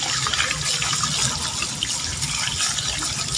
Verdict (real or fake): real